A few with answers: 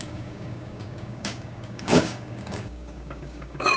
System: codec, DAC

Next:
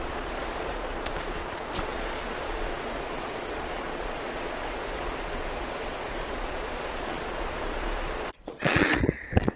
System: vocoder, Vocos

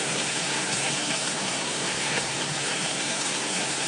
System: codec, SNAC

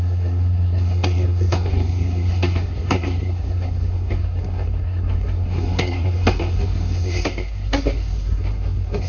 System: codec, SNAC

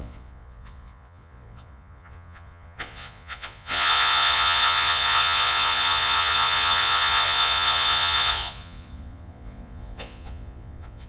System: vocoder, Vocos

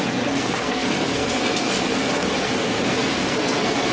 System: codec, SNAC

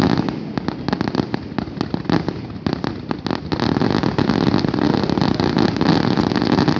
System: none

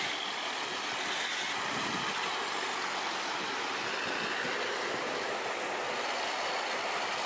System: none